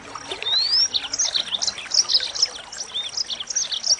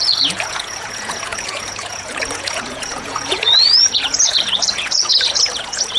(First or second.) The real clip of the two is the first